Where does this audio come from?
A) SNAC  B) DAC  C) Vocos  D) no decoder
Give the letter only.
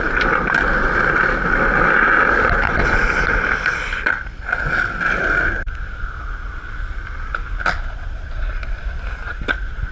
D